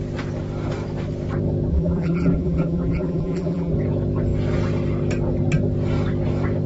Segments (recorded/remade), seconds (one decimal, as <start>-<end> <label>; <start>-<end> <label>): 0.0-1.7 recorded; 1.7-3.7 remade; 3.7-6.7 recorded